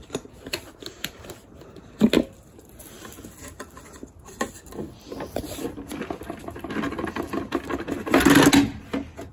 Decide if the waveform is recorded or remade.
recorded